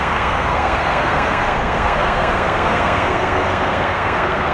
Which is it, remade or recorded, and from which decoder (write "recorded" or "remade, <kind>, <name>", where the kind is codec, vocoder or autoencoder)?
remade, codec, SNAC